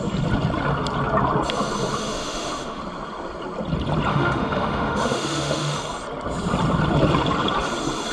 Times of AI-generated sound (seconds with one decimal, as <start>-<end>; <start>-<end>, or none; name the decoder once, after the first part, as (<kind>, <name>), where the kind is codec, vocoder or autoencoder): 2.0-2.8 (autoencoder, DAC-VAE); 4.1-5.8